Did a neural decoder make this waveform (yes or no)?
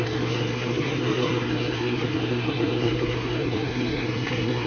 yes